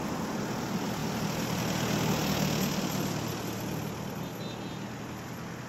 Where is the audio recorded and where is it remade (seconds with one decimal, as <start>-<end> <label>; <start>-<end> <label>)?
0.0-5.7 recorded